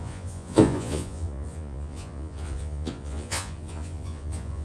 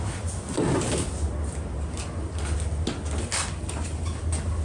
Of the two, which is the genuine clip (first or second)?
second